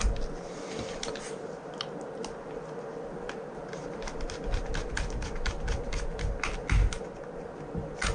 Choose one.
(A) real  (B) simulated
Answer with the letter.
A